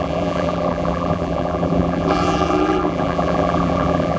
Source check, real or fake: fake